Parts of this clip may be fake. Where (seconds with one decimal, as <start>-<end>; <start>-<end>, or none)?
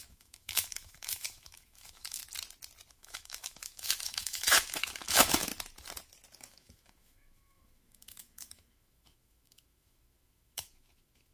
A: 0.0-2.2; 2.9-5.5; 6.4-11.3